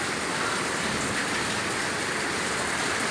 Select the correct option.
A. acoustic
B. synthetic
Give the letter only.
B